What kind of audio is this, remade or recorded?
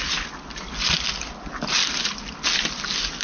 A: recorded